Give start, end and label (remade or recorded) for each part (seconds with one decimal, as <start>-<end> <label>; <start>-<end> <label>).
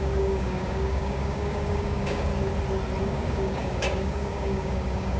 0.0-2.3 remade; 2.3-3.0 recorded; 3.0-5.2 remade